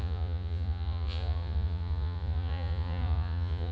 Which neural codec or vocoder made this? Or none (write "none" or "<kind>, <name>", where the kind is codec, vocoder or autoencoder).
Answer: vocoder, Vocos